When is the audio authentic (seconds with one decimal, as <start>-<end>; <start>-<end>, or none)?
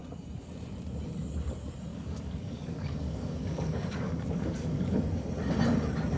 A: 0.0-1.9; 5.0-6.2